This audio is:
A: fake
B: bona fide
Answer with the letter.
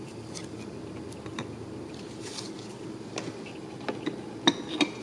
B